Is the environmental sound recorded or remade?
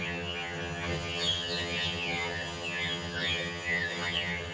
remade